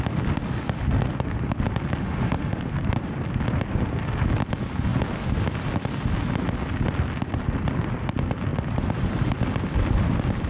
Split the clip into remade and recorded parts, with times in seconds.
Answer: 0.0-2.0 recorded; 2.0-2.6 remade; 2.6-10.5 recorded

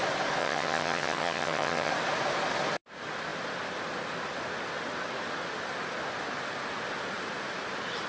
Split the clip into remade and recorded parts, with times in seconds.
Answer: 0.0-0.4 recorded; 0.4-1.9 remade; 1.9-8.1 recorded

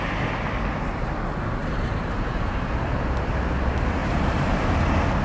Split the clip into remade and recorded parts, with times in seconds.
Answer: 0.0-1.6 recorded; 1.6-2.8 remade; 2.8-4.0 recorded; 4.0-4.8 remade; 4.8-5.2 recorded

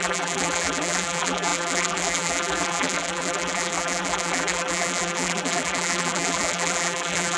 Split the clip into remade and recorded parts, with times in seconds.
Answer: 0.0-7.4 remade

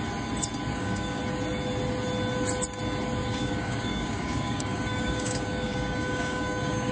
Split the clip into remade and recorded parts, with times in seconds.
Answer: 0.0-0.7 recorded; 0.7-1.2 remade; 1.2-3.2 recorded; 3.2-6.9 remade

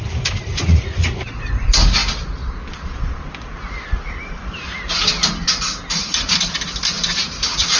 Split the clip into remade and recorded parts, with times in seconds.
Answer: 0.0-0.5 recorded; 0.5-1.2 remade; 1.2-7.8 recorded

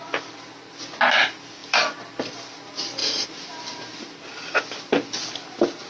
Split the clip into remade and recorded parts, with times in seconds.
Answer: 0.0-1.6 recorded; 1.6-2.6 remade; 2.6-3.0 recorded; 3.0-4.2 remade; 4.2-5.9 recorded